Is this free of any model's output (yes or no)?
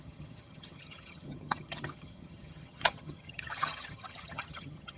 no